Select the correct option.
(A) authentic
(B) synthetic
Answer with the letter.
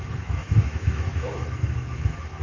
B